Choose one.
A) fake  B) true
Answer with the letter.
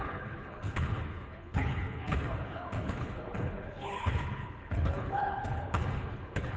A